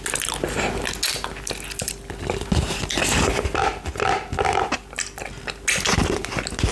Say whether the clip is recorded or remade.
recorded